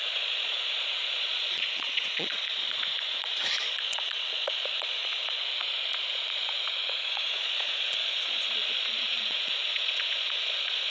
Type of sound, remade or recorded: remade